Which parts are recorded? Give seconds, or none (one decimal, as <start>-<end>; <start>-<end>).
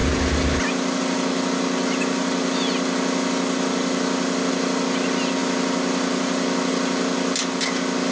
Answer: 0.0-8.1